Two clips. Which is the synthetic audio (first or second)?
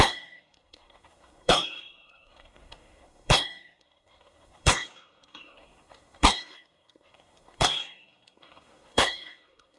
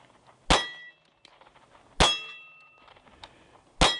first